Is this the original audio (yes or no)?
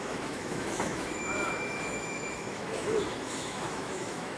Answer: no